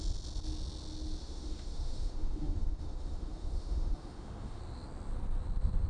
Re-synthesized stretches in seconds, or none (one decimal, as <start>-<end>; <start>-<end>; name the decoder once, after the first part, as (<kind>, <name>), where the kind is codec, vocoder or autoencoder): 1.2-4.6 (autoencoder, DAC-VAE)